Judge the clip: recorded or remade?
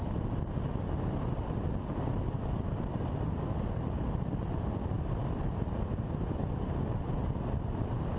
remade